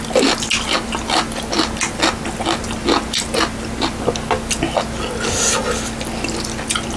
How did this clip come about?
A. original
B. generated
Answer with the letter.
A